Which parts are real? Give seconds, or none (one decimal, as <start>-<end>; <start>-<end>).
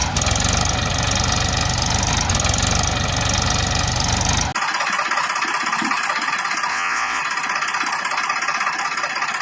0.0-6.7; 7.2-9.4